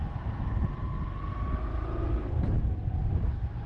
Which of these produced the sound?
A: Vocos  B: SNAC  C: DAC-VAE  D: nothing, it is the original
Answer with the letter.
D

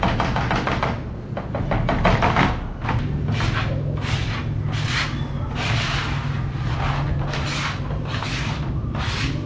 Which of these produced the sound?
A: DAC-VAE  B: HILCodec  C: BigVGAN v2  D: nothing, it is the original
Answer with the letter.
D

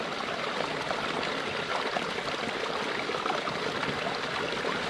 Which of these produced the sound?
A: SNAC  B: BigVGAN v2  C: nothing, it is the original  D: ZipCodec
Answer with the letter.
C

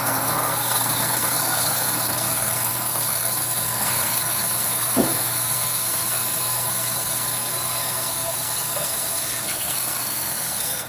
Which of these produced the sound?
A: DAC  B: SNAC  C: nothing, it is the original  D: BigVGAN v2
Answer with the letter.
B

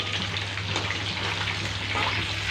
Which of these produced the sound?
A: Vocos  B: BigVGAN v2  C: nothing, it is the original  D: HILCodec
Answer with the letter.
C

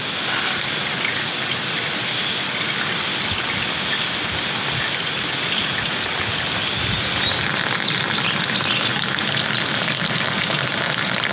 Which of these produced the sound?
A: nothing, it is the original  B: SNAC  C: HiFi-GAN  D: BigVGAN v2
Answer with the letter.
A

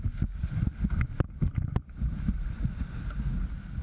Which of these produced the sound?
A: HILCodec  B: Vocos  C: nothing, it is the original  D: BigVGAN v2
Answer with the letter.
C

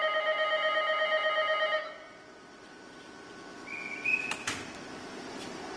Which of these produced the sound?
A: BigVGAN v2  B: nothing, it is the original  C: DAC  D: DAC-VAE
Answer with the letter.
B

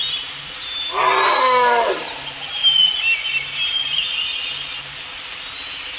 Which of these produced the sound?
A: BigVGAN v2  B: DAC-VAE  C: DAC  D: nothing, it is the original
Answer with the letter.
D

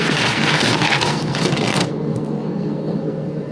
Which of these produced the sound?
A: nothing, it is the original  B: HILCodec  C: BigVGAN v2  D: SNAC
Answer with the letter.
D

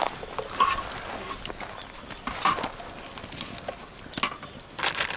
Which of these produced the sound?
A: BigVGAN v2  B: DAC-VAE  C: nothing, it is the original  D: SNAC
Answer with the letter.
C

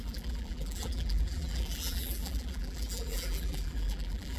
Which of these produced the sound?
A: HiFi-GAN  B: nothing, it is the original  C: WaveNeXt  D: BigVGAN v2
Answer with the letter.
D